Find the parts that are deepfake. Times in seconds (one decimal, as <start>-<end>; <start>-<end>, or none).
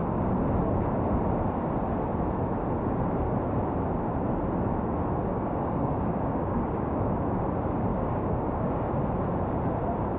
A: 5.3-7.2; 7.9-9.0